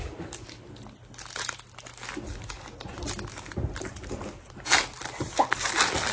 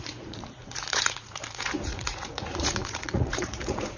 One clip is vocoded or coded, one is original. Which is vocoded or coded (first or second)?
second